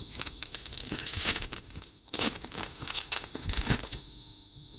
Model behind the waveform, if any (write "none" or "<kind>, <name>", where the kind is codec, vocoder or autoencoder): autoencoder, DAC-VAE